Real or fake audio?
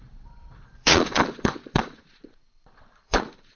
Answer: fake